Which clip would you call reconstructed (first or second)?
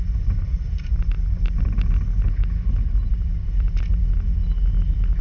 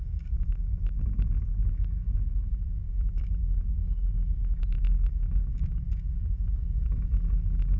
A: second